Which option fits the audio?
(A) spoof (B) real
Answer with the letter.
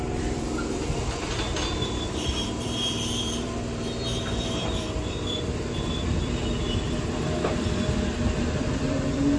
A